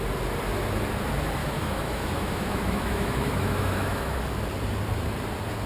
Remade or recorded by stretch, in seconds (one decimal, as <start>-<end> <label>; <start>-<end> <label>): 0.0-1.4 recorded; 1.4-4.2 remade; 4.2-5.7 recorded

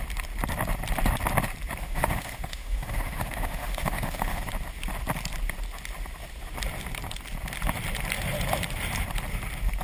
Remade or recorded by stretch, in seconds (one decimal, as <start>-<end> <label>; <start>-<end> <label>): 0.0-1.8 recorded; 1.8-4.4 remade; 4.4-9.8 recorded

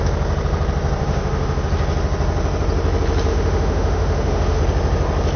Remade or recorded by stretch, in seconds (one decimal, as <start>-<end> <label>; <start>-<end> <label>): 0.0-1.0 recorded; 1.0-1.6 remade; 1.6-3.3 recorded; 3.3-4.6 remade; 4.6-5.4 recorded

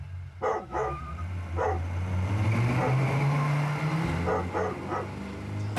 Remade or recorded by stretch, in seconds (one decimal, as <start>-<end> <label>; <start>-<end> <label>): 0.0-0.5 recorded; 0.5-1.0 remade; 1.0-5.8 recorded

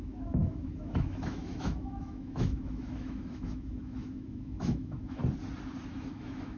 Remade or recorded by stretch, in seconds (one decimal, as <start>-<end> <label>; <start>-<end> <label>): 0.0-5.2 remade; 5.2-5.9 recorded; 5.9-6.6 remade

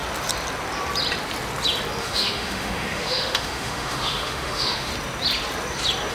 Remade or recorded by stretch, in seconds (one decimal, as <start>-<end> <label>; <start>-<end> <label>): 0.0-2.0 recorded; 2.0-4.9 remade; 4.9-6.1 recorded

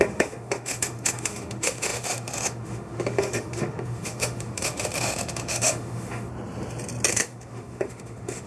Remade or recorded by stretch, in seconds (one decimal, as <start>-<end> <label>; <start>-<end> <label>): 0.0-6.3 remade; 6.3-7.1 recorded; 7.1-8.5 remade